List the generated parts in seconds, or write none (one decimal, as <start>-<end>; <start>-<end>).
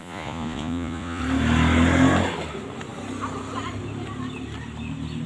0.0-1.2